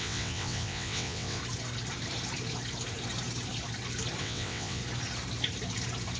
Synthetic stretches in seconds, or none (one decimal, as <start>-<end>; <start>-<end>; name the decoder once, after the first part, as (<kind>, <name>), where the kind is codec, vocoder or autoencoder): 0.0-1.4 (vocoder, WaveNeXt); 4.2-4.8